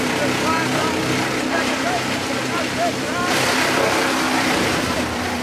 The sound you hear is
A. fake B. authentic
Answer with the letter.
A